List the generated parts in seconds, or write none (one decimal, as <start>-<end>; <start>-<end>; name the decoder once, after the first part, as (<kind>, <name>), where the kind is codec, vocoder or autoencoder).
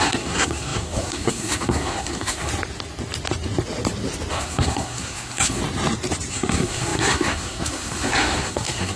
0.0-2.5 (codec, SNAC); 4.3-5.6; 6.3-9.0